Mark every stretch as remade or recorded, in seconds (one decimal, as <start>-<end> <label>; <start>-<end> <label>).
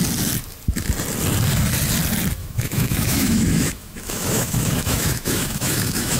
0.0-2.4 recorded; 2.4-6.2 remade